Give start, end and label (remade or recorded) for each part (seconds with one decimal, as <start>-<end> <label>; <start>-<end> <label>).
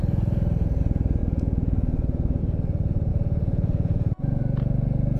0.0-1.2 recorded; 1.2-2.4 remade; 2.4-3.1 recorded; 3.1-4.4 remade; 4.4-5.2 recorded